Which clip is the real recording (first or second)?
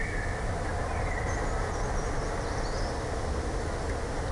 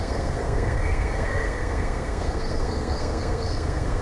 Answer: first